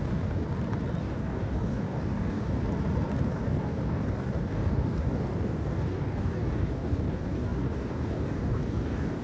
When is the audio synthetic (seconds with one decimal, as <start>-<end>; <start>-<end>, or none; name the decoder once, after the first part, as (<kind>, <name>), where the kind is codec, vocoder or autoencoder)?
0.0-0.5 (codec, DAC); 1.0-2.6; 3.2-9.2